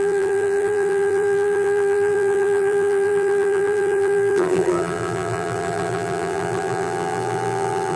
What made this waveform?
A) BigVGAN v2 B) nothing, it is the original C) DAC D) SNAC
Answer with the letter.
A